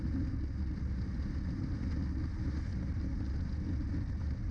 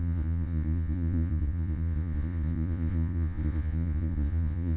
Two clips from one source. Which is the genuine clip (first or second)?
first